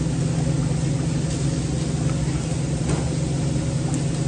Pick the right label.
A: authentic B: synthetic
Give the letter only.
A